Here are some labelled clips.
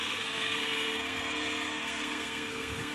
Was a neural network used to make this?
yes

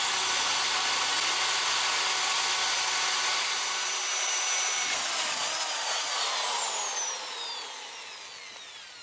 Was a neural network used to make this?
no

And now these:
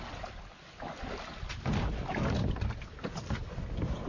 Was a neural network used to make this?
no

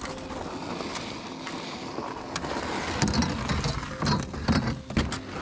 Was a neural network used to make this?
no